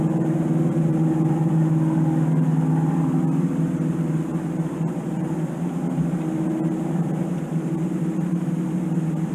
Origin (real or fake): real